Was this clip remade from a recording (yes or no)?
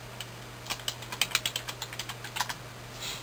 no